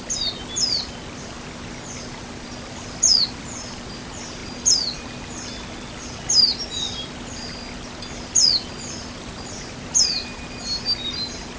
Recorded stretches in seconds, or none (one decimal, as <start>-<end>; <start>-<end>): 0.0-11.6